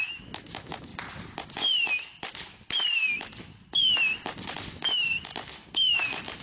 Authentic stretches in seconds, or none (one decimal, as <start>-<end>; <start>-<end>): 0.9-4.7; 5.3-6.4